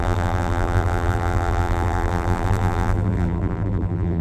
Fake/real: fake